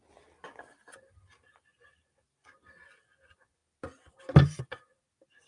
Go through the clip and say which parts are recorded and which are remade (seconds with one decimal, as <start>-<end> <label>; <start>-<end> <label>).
0.0-5.5 recorded